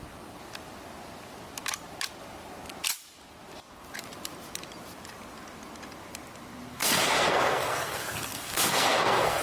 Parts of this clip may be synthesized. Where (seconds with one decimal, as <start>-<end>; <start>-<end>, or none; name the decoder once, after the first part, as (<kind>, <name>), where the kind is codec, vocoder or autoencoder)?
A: 6.7-9.4 (codec, SNAC)

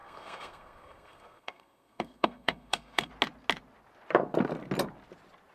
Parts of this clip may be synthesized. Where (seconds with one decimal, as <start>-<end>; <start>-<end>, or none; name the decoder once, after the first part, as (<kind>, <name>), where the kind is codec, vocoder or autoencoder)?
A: 0.0-3.1 (codec, SNAC)

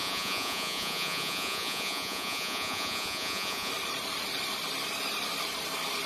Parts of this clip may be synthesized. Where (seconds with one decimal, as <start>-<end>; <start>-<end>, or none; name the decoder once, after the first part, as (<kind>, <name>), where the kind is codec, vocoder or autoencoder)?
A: 0.0-3.7 (vocoder, Vocos)

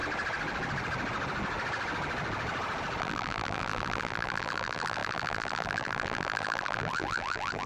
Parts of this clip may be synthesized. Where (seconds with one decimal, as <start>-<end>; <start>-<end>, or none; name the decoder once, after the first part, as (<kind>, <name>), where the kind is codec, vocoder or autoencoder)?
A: 3.0-7.7 (vocoder, BigVGAN v2)

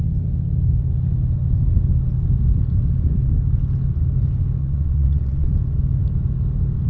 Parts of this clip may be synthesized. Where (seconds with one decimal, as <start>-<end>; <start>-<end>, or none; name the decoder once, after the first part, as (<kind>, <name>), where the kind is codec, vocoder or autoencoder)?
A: 4.6-5.5 (vocoder, WaveNeXt)

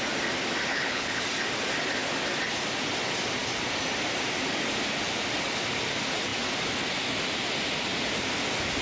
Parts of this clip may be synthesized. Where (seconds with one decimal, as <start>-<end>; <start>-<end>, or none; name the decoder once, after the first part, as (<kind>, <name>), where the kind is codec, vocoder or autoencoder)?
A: 0.7-1.2 (codec, HILCodec)

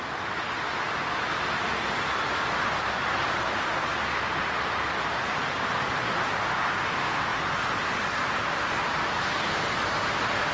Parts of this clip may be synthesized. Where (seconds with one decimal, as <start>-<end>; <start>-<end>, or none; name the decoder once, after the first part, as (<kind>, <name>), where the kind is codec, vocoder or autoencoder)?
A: none